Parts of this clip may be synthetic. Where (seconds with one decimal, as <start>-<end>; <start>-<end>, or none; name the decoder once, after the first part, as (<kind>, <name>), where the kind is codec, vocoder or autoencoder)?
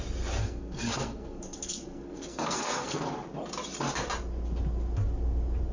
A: 0.4-3.0 (codec, SNAC)